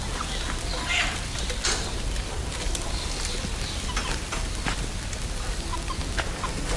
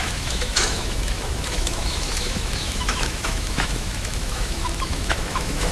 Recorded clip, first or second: first